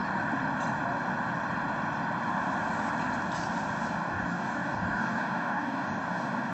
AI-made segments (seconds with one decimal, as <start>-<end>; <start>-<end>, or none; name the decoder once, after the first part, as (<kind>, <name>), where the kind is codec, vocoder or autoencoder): 4.0-6.5 (codec, DAC)